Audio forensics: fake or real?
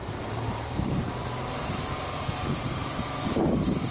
fake